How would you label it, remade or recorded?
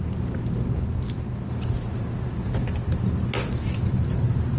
recorded